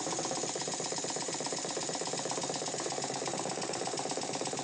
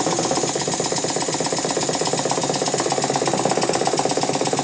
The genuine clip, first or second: second